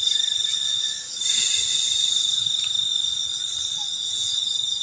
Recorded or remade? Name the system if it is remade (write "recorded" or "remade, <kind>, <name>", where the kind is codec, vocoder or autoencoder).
recorded